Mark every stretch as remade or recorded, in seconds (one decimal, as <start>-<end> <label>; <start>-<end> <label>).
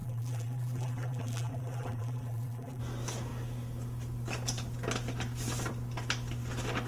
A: 0.0-2.8 remade; 2.8-6.9 recorded